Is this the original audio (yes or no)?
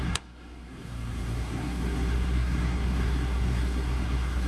no